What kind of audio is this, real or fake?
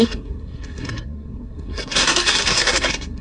fake